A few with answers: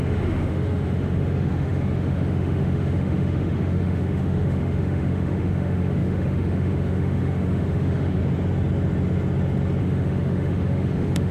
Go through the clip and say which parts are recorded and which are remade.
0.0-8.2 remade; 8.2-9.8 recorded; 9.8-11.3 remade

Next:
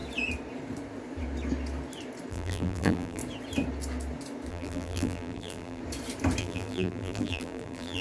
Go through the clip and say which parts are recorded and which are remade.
0.0-2.3 recorded; 2.3-3.2 remade; 3.2-4.5 recorded; 4.5-5.8 remade; 5.8-6.4 recorded; 6.4-8.0 remade

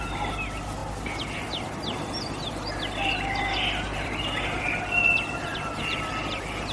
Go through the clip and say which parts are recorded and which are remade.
0.0-6.7 recorded

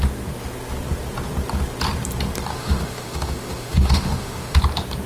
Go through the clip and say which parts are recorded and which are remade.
0.0-2.5 recorded; 2.5-4.6 remade; 4.6-5.1 recorded

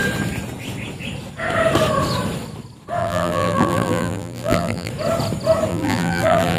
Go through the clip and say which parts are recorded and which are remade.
0.0-3.0 recorded; 3.0-4.9 remade; 4.9-5.7 recorded; 5.7-6.6 remade

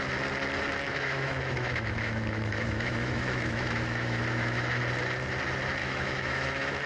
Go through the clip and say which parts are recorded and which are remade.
0.0-0.9 recorded; 0.9-4.8 remade; 4.8-5.8 recorded; 5.8-6.9 remade

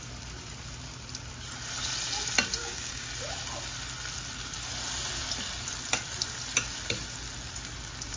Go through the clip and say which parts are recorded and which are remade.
0.0-2.6 recorded; 2.6-3.1 remade; 3.1-8.2 recorded

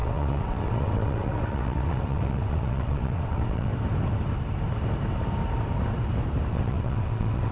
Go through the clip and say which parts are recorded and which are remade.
0.0-3.7 remade; 3.7-6.5 recorded; 6.5-7.5 remade